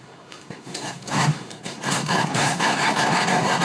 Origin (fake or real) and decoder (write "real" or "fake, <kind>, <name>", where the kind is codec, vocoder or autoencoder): fake, codec, SNAC